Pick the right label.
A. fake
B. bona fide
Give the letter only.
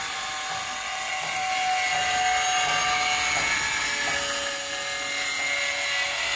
B